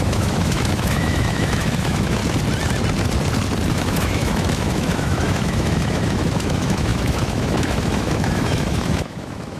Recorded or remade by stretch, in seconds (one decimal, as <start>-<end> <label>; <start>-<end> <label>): 0.0-2.2 remade; 2.2-3.7 recorded; 3.7-9.6 remade

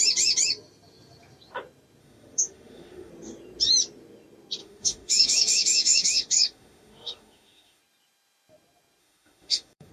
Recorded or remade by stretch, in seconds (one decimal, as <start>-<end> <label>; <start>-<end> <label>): 0.0-2.0 recorded; 2.0-3.1 remade; 3.1-4.6 recorded; 4.6-7.8 remade; 7.8-9.0 recorded; 9.0-9.9 remade